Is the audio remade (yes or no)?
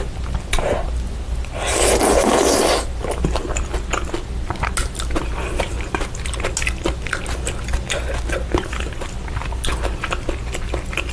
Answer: no